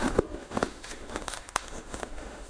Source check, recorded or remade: remade